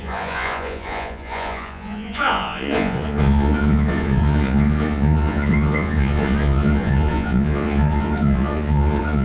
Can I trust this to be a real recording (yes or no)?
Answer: no